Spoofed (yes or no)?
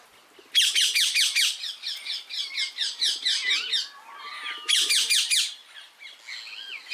no